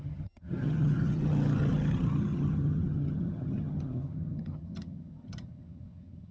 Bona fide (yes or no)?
no